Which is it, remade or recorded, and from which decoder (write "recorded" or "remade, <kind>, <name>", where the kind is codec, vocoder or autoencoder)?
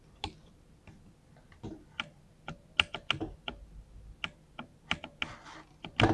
recorded